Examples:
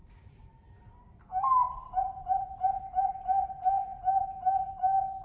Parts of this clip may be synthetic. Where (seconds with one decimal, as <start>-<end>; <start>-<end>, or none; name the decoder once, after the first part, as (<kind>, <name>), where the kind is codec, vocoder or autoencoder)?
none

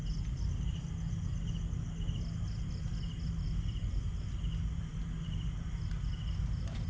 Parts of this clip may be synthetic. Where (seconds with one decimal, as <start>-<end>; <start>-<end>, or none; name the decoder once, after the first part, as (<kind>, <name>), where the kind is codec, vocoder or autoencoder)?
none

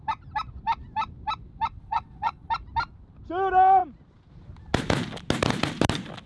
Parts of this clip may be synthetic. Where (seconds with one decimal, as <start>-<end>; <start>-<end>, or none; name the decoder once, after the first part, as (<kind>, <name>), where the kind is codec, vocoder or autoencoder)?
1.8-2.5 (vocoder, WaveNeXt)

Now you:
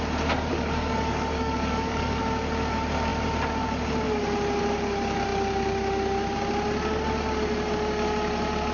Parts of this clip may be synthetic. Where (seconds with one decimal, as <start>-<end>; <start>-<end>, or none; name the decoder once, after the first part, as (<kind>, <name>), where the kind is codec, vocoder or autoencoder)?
0.5-2.2 (codec, DAC)